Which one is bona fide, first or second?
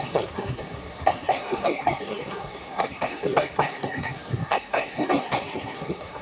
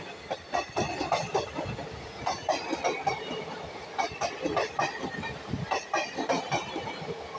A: second